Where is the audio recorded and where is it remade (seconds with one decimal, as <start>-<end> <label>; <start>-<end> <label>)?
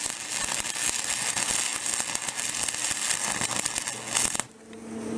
0.0-5.2 recorded